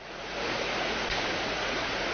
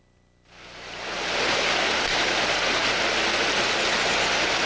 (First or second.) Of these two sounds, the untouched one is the second